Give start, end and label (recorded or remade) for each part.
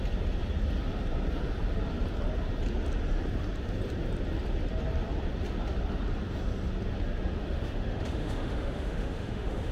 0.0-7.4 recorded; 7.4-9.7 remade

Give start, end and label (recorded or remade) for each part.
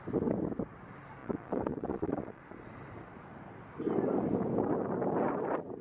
0.0-1.2 recorded; 1.2-2.4 remade; 2.4-5.8 recorded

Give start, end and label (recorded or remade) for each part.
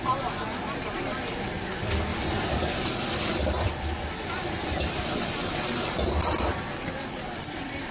0.0-2.1 recorded; 2.1-3.4 remade; 3.4-4.2 recorded; 4.2-7.9 remade